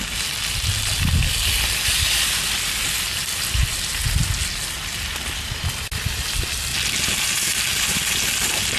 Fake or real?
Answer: real